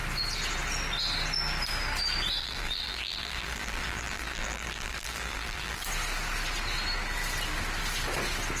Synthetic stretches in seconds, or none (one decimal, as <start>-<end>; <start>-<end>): 2.4-5.8